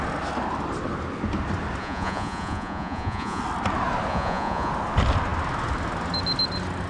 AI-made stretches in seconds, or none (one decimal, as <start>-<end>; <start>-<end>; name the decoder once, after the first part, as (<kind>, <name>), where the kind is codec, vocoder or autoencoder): 1.8-3.4 (vocoder, Vocos); 4.1-4.7